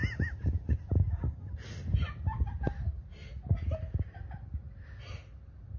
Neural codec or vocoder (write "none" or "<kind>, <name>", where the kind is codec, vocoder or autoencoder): none